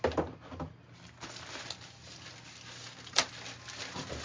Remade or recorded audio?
recorded